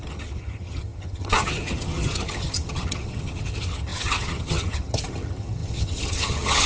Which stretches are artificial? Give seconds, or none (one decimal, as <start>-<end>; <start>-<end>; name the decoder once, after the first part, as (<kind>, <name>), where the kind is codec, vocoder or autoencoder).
0.0-6.7 (vocoder, HiFi-GAN)